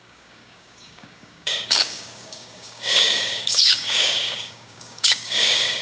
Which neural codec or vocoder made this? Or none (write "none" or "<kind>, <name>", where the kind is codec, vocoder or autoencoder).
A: codec, DAC